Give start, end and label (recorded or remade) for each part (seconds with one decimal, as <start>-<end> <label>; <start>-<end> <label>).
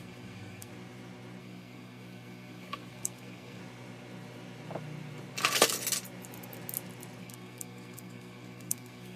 0.0-0.7 remade; 0.7-1.4 recorded; 1.4-3.6 remade; 3.6-7.2 recorded; 7.2-9.2 remade